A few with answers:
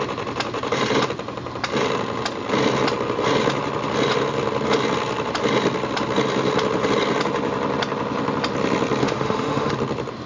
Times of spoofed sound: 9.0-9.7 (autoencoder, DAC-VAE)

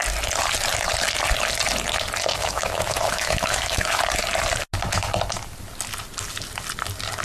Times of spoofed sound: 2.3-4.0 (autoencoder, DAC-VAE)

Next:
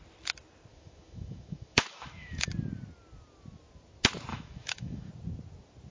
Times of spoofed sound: 0.7-2.5 (autoencoder, DAC-VAE); 4.3-5.1